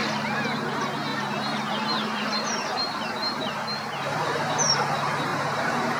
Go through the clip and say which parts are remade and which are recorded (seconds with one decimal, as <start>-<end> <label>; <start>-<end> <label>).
0.0-1.1 recorded; 1.1-4.7 remade; 4.7-5.3 recorded; 5.3-6.0 remade